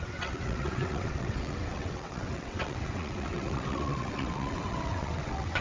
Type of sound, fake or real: fake